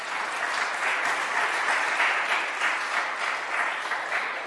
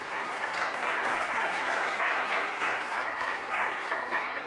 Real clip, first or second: first